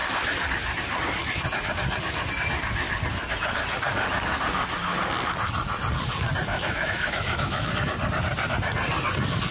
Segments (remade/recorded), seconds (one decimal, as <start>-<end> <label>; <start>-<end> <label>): 0.0-6.5 recorded; 6.5-7.7 remade; 7.7-9.5 recorded